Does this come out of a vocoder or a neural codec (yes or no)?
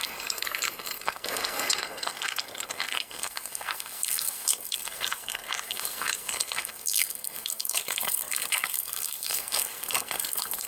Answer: yes